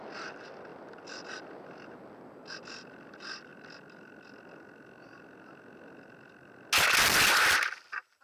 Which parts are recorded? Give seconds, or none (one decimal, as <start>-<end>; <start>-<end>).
0.0-8.2